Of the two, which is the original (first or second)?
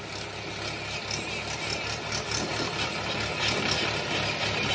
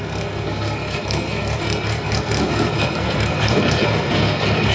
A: first